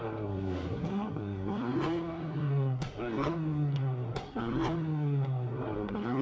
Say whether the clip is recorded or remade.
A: remade